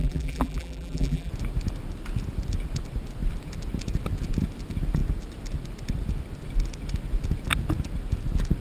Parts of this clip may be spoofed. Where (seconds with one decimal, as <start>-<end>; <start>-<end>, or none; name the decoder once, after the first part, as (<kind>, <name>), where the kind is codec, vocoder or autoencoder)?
0.0-1.3 (vocoder, BigVGAN v2)